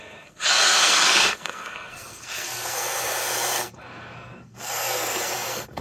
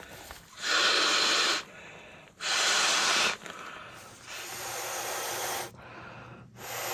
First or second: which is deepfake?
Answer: first